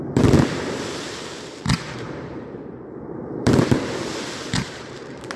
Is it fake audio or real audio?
fake